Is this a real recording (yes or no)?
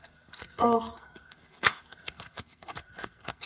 no